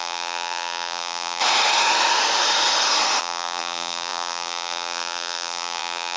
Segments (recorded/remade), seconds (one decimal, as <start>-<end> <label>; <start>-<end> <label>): 0.0-1.4 remade; 1.4-3.2 recorded; 3.2-6.2 remade